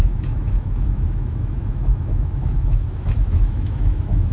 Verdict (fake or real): fake